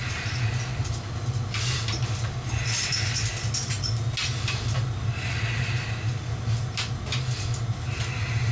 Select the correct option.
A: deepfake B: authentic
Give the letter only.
B